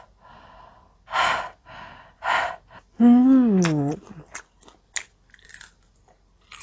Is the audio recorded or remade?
recorded